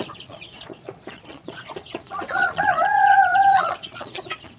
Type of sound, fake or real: fake